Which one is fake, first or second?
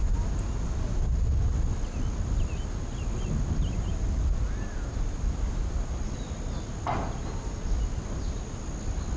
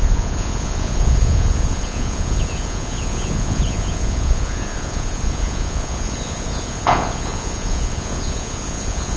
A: second